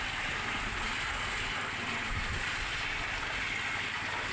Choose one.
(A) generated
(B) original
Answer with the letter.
B